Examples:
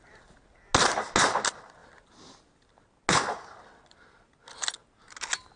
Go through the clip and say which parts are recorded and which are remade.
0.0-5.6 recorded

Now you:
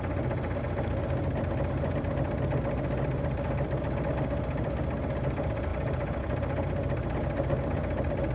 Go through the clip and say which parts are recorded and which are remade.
0.0-8.3 recorded